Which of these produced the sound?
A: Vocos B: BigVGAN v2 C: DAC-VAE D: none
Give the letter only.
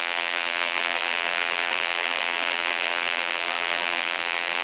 B